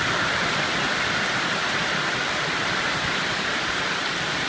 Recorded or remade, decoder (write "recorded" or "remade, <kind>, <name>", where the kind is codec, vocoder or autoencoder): remade, vocoder, BigVGAN v2